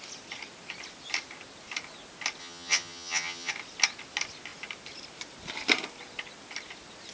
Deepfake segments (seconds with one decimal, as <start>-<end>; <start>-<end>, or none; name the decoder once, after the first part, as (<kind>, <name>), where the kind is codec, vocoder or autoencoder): 2.4-3.5 (vocoder, HiFi-GAN)